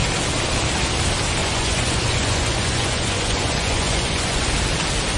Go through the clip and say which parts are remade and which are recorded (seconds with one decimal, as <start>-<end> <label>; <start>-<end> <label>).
0.0-1.4 recorded; 1.4-4.5 remade; 4.5-5.2 recorded